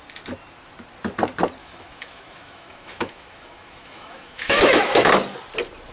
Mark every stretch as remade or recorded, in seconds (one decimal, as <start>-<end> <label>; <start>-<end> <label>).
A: 0.0-1.6 recorded; 1.6-5.1 remade; 5.1-5.9 recorded